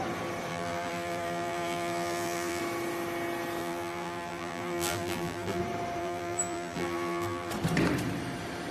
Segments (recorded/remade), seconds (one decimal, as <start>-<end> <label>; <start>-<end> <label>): 0.0-0.5 recorded; 0.5-2.6 remade; 2.6-3.6 recorded; 3.6-5.6 remade; 5.6-6.0 recorded; 6.0-7.5 remade; 7.5-8.7 recorded